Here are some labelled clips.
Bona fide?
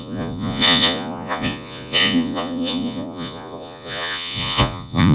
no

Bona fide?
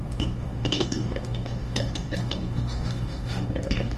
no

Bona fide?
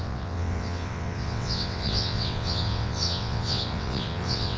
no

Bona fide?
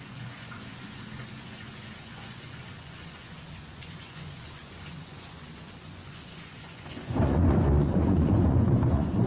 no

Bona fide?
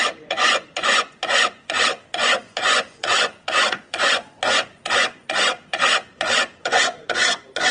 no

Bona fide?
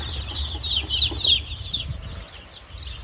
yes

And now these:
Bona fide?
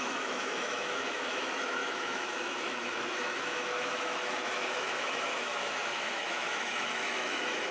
no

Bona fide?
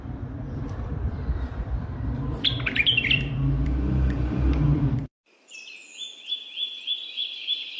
no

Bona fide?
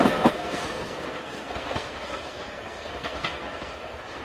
no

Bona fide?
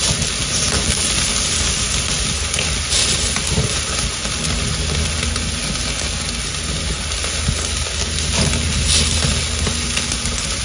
yes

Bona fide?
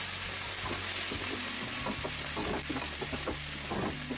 yes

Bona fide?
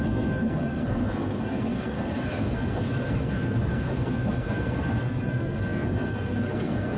no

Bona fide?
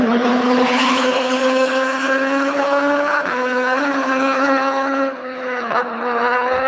no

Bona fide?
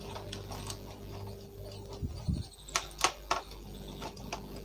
yes